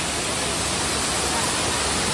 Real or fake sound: real